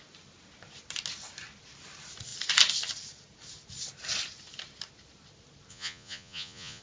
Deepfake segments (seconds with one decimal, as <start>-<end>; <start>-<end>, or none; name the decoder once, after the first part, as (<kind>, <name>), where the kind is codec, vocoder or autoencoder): 5.7-6.8 (vocoder, Vocos)